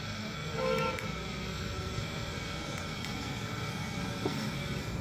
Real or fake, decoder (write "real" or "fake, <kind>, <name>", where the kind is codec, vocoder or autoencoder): fake, codec, SNAC